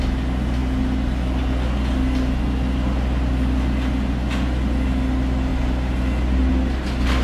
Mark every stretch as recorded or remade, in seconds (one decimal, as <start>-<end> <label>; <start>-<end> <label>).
0.0-7.2 recorded